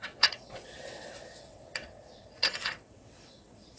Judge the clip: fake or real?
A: fake